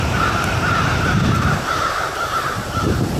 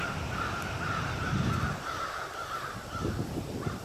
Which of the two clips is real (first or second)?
second